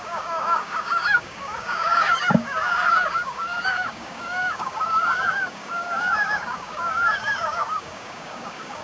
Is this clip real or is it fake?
fake